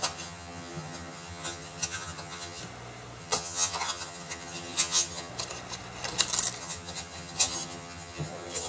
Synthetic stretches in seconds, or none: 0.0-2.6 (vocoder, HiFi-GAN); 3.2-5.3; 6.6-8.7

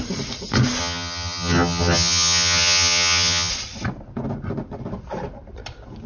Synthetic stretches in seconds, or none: 0.8-3.5 (vocoder, HiFi-GAN)

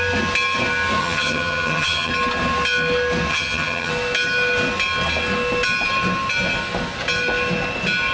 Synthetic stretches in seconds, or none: 1.0-2.1 (vocoder, HiFi-GAN); 3.3-3.9